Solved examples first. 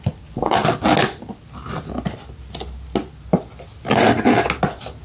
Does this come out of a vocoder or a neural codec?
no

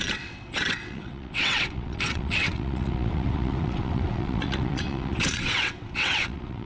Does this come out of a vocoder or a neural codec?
yes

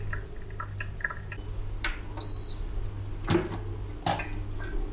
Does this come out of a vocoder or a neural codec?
no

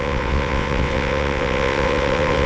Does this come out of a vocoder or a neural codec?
yes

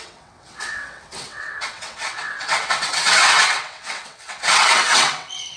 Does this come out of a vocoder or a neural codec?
yes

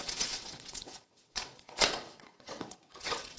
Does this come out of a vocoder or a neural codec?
yes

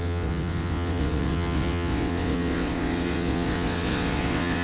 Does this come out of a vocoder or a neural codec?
yes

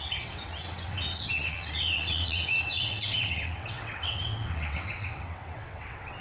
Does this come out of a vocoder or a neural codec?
yes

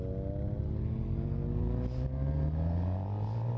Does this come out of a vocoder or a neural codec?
no